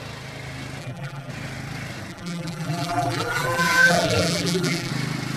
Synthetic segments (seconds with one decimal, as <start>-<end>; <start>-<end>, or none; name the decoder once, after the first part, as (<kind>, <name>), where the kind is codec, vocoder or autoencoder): 0.8-1.3 (vocoder, BigVGAN v2); 2.1-4.9